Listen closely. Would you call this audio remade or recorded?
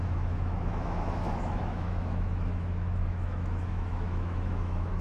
remade